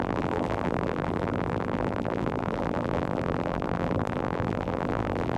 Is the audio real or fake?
fake